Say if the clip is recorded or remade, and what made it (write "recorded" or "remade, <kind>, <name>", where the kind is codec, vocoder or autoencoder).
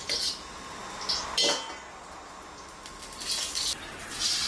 recorded